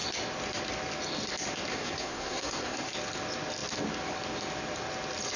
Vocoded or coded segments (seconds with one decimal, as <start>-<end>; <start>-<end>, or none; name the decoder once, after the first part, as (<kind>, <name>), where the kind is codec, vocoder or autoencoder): 1.7-2.9 (codec, SNAC)